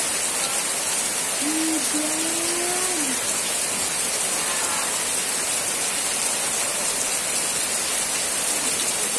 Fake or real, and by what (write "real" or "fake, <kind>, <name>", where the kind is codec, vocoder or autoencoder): real